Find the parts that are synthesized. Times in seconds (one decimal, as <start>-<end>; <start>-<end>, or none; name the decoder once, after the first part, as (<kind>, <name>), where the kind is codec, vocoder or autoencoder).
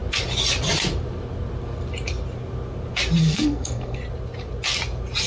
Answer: 3.2-4.0 (codec, SNAC)